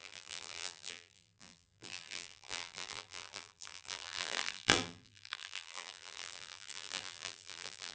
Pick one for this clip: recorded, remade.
remade